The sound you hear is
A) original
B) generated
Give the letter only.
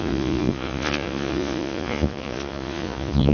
B